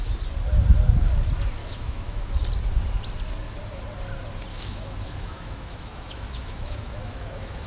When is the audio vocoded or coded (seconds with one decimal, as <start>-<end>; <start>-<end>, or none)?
1.6-2.2; 4.5-7.7